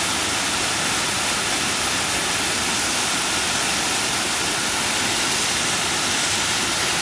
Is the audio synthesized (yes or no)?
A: no